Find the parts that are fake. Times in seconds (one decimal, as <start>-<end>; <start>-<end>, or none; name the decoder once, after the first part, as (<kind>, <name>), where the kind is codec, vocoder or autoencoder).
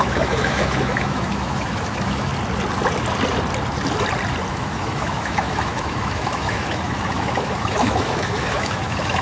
0.0-2.3 (autoencoder, DAC-VAE); 4.5-9.2